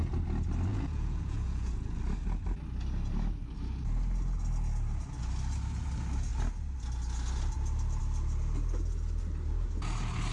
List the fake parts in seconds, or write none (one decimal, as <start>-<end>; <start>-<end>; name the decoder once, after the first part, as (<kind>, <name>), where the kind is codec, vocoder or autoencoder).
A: 0.7-1.7 (vocoder, Vocos)